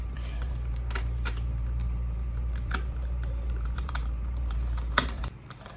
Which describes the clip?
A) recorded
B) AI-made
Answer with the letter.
B